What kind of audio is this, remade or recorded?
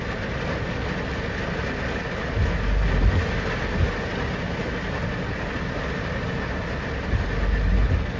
recorded